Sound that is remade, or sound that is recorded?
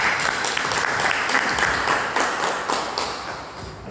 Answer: recorded